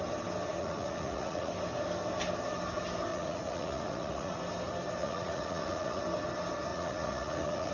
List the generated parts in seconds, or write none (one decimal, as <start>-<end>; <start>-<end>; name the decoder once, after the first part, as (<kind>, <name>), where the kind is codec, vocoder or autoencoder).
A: 0.6-1.5 (vocoder, Vocos); 3.1-4.4; 5.0-6.0; 6.7-7.7

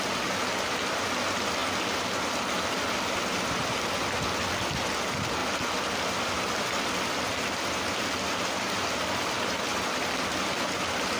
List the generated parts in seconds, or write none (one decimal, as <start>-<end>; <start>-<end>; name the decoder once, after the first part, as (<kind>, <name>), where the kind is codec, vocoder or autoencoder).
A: none

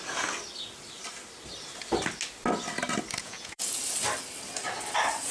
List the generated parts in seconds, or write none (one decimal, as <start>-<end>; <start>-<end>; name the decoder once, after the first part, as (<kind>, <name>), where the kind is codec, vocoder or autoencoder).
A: 3.2-3.8 (vocoder, Vocos)

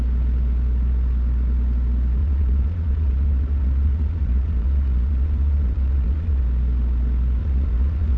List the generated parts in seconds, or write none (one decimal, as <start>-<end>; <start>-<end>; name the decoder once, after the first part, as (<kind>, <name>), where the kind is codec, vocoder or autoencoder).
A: 2.2-6.4 (vocoder, Vocos); 7.4-8.2

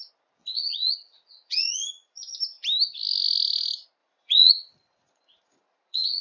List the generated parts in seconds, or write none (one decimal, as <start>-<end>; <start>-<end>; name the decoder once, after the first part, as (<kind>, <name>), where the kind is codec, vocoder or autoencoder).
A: 0.4-2.4 (vocoder, Vocos); 4.0-6.2

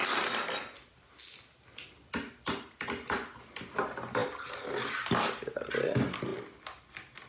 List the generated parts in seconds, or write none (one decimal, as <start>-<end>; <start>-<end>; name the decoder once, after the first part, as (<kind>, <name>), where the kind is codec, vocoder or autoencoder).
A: none

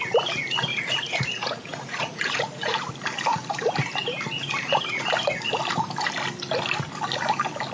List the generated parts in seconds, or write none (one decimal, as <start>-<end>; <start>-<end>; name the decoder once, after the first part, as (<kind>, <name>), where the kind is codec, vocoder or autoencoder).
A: 0.7-2.9 (vocoder, Vocos)

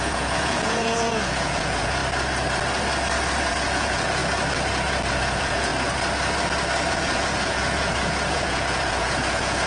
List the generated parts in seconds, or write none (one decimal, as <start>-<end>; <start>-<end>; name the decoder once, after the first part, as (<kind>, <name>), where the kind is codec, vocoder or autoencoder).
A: 0.0-2.0 (vocoder, Vocos); 3.5-4.2; 5.1-5.7; 6.9-9.7